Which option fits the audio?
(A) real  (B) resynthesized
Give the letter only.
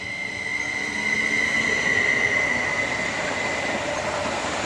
A